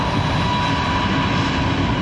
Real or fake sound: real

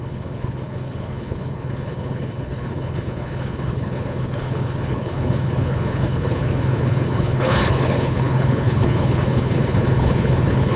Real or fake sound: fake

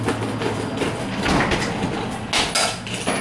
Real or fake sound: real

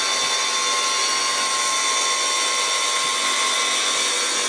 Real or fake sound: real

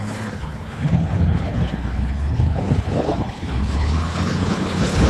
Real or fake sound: fake